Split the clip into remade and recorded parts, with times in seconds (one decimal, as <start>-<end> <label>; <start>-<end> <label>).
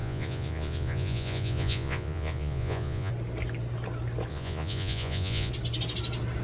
0.0-3.1 remade; 3.1-4.3 recorded; 4.3-5.5 remade; 5.5-6.4 recorded